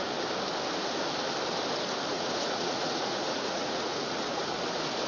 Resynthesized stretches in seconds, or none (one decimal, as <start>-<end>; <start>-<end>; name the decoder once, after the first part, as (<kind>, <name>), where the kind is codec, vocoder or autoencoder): 2.1-4.4 (vocoder, Vocos)